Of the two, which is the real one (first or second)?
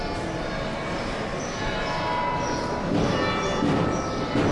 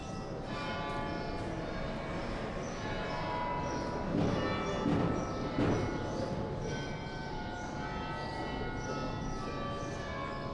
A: second